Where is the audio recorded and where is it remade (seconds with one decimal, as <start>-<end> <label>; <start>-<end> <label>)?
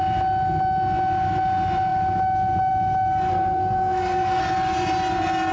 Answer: 0.0-3.3 recorded; 3.3-4.4 remade; 4.4-5.5 recorded